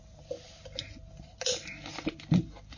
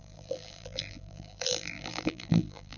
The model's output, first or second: second